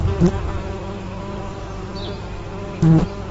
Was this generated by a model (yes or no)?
no